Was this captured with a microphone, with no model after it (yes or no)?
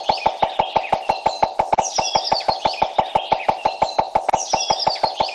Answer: no